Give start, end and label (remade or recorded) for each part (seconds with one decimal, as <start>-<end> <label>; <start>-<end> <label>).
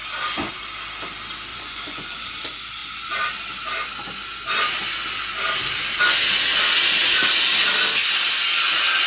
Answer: 0.0-1.5 recorded; 1.5-2.3 remade; 2.3-9.1 recorded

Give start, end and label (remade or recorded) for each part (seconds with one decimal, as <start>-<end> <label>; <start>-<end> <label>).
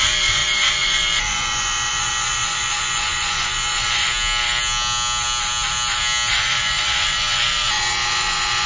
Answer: 0.0-4.1 remade; 4.1-6.3 recorded; 6.3-8.7 remade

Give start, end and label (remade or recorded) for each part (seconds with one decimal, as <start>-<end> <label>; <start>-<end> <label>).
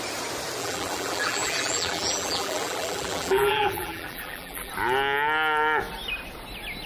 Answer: 0.0-0.6 recorded; 0.6-4.7 remade; 4.7-6.9 recorded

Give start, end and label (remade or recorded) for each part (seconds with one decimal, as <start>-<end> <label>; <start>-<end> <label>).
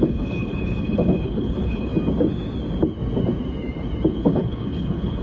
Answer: 0.0-1.9 remade; 1.9-4.1 recorded; 4.1-5.2 remade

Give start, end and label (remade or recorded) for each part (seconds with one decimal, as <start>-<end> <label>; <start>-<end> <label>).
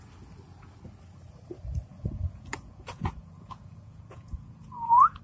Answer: 0.0-1.9 recorded; 1.9-5.2 remade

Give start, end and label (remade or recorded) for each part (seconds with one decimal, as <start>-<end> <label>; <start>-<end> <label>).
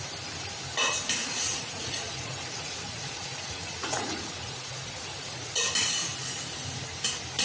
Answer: 0.0-1.2 recorded; 1.2-5.6 remade; 5.6-7.4 recorded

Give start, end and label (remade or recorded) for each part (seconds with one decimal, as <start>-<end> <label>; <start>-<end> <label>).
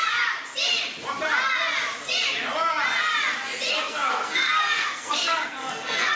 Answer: 0.0-3.7 recorded; 3.7-6.2 remade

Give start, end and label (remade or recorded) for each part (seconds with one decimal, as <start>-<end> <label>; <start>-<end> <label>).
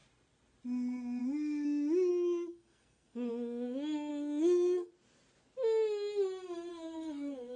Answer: 0.0-2.1 recorded; 2.1-3.3 remade; 3.3-4.1 recorded; 4.1-4.9 remade; 4.9-6.7 recorded; 6.7-7.6 remade